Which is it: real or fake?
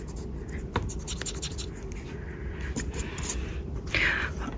real